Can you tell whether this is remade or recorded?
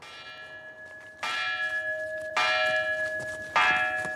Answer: recorded